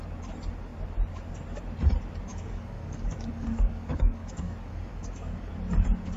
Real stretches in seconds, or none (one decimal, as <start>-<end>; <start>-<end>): 0.0-2.3; 5.5-6.2